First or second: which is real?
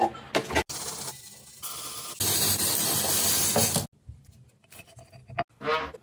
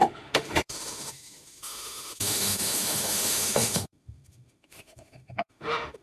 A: first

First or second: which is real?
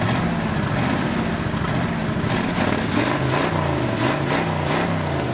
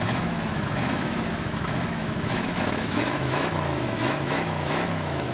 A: first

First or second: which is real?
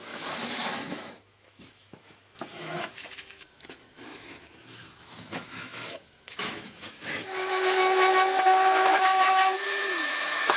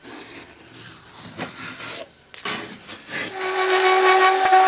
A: second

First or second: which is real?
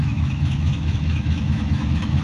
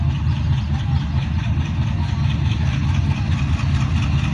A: second